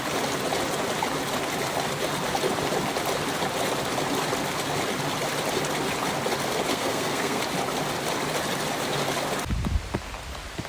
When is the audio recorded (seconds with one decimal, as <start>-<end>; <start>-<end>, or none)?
0.0-6.7; 7.4-10.7